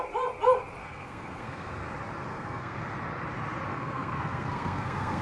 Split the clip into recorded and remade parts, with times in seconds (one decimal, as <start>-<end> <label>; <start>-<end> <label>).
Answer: 0.0-0.8 recorded; 0.8-1.7 remade; 1.7-2.3 recorded; 2.3-2.8 remade; 2.8-3.7 recorded; 3.7-5.2 remade